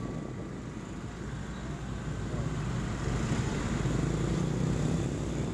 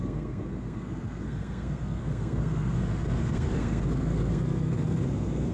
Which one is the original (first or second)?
first